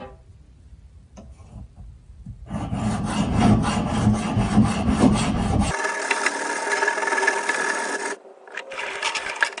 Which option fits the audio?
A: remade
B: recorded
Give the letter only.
A